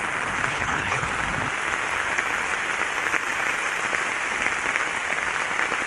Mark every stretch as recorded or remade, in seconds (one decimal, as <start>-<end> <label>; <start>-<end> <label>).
0.0-0.5 recorded; 0.5-1.1 remade; 1.1-5.9 recorded